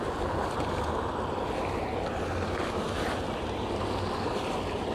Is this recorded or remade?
recorded